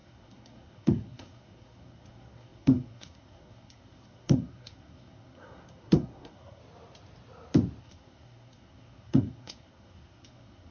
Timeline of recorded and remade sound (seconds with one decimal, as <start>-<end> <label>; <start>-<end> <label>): 0.0-6.6 remade; 6.6-7.8 recorded; 7.8-10.7 remade